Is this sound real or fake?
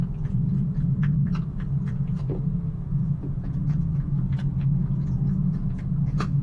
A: fake